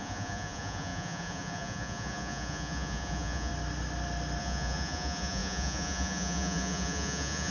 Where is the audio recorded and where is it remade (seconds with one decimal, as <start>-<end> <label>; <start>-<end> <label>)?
0.0-3.5 remade; 3.5-4.4 recorded; 4.4-7.5 remade

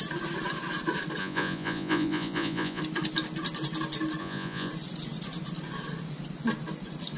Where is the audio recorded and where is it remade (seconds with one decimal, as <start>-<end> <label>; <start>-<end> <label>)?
0.0-1.2 recorded; 1.2-2.8 remade; 2.8-4.2 recorded; 4.2-4.7 remade; 4.7-7.2 recorded

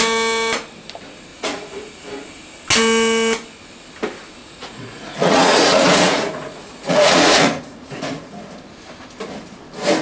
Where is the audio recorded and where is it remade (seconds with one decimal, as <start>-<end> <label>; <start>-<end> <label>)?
0.0-1.3 recorded; 1.3-1.9 remade; 1.9-4.4 recorded; 4.4-8.5 remade; 8.5-10.0 recorded

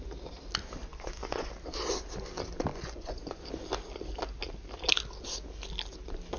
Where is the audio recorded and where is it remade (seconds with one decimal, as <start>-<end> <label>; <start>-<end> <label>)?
0.0-0.8 recorded; 0.8-1.5 remade; 1.5-2.7 recorded; 2.7-3.4 remade; 3.4-6.4 recorded